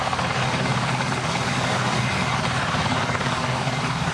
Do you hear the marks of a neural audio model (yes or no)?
yes